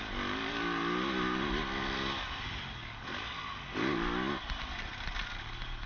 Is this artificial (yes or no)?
no